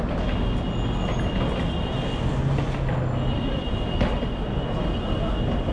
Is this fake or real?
real